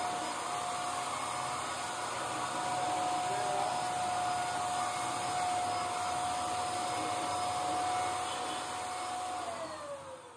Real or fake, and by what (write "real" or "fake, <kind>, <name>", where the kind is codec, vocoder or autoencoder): real